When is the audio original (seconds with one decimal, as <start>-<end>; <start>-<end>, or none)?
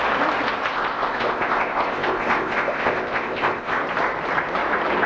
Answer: 0.0-0.7; 3.8-5.1